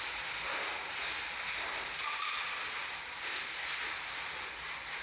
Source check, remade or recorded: recorded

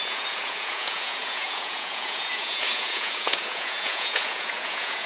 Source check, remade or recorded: remade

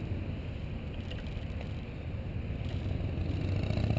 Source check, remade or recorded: recorded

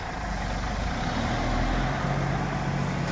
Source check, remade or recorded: recorded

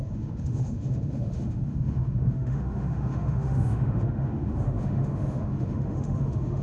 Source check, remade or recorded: remade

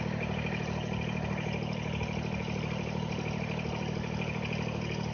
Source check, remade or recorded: recorded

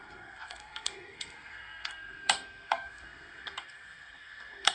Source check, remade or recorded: remade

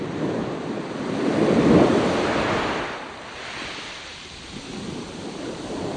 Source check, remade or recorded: remade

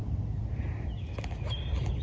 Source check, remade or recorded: recorded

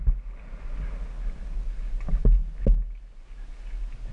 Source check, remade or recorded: recorded